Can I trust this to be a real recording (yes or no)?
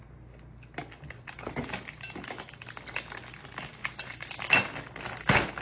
yes